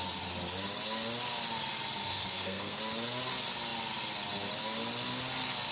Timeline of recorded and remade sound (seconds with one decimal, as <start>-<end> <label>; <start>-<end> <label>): 0.0-2.1 recorded; 2.1-2.8 remade; 2.8-5.7 recorded